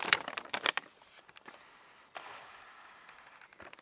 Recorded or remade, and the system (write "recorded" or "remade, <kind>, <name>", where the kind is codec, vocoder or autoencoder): recorded